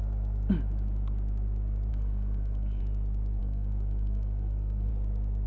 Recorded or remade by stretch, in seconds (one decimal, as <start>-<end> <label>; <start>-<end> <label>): 0.0-1.9 recorded; 1.9-2.8 remade; 2.8-3.4 recorded; 3.4-4.9 remade; 4.9-5.5 recorded